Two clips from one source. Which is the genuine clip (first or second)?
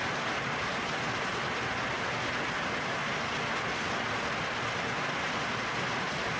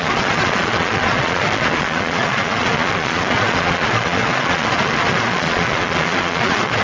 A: first